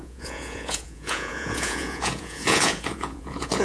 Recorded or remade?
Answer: remade